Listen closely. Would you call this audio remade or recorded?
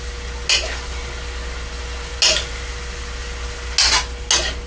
recorded